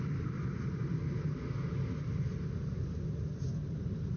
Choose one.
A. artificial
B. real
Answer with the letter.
B